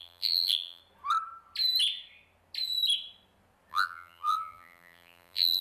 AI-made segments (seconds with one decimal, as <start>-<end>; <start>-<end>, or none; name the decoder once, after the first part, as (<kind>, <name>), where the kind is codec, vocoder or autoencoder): 0.0-0.8 (vocoder, BigVGAN v2); 3.7-5.6